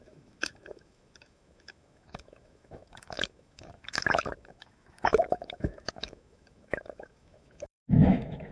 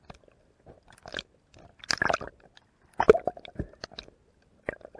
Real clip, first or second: second